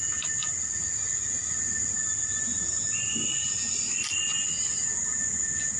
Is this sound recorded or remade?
recorded